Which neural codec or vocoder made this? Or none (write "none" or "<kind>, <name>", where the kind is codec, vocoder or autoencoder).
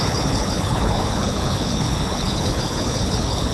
codec, HILCodec